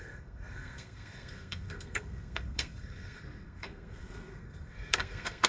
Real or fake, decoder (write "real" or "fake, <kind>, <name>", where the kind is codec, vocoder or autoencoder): fake, codec, SNAC